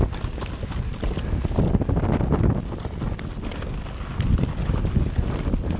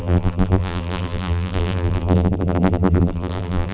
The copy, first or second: second